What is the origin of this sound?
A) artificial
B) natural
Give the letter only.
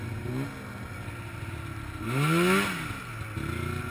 B